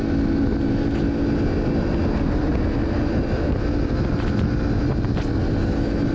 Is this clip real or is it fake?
real